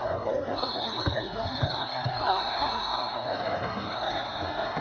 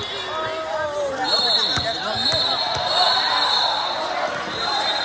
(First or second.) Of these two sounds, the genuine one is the second